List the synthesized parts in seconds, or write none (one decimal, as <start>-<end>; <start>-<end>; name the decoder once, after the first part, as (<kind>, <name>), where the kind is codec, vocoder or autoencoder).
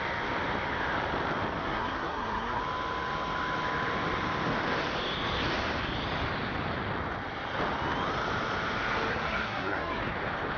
1.6-2.6 (codec, SNAC); 9.1-10.0